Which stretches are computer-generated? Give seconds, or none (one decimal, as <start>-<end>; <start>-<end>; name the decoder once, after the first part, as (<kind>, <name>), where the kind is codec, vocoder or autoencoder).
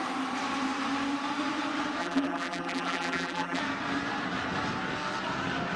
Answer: 2.0-3.6 (vocoder, BigVGAN v2)